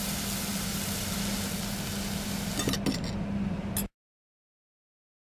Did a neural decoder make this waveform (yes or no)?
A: no